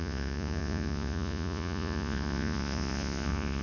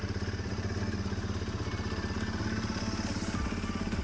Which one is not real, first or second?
first